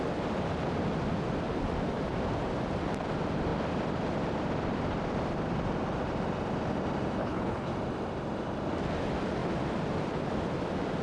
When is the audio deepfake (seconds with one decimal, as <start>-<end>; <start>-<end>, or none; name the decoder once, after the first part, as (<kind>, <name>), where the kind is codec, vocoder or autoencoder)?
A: 7.2-7.7 (codec, HILCodec)